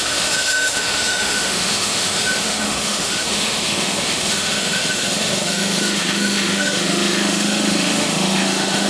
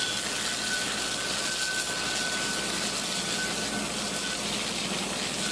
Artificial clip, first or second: first